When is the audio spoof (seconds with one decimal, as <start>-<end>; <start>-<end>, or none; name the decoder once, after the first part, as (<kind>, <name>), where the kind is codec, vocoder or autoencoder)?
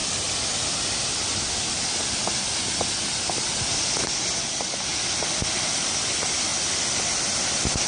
none